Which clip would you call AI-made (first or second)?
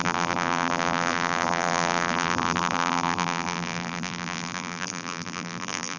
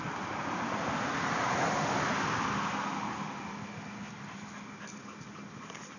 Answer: first